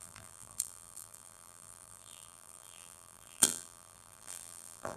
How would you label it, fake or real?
fake